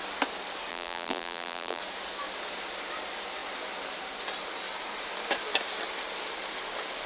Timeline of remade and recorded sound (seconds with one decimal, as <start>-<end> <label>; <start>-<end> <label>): 0.0-0.7 recorded; 0.7-1.8 remade; 1.8-7.1 recorded